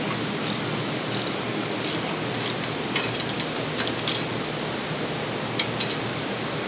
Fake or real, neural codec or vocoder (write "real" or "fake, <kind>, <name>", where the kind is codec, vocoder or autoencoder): real